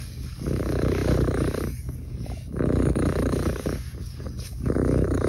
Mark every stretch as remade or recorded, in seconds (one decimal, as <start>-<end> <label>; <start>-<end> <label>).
0.0-5.3 remade